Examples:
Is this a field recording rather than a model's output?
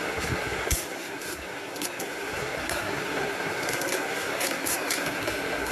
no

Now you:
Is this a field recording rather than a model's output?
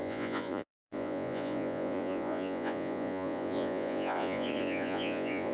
no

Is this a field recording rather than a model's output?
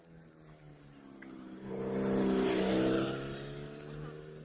yes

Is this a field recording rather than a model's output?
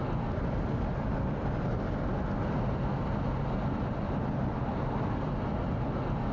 yes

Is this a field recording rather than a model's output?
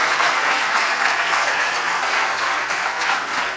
no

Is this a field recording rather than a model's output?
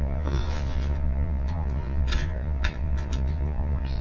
no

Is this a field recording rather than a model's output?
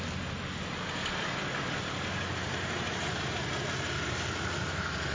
yes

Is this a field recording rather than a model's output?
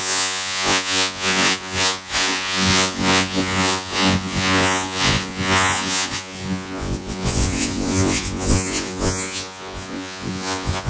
no